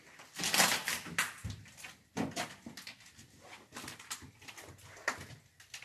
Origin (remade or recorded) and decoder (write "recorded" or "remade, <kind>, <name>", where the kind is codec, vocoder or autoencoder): recorded